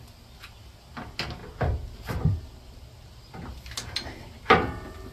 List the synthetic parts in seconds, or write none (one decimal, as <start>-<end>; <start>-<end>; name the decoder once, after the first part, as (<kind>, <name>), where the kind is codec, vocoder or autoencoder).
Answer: none